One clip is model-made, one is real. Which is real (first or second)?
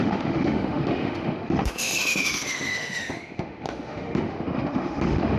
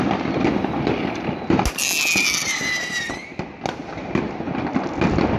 second